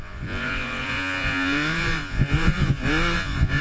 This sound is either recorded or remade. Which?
remade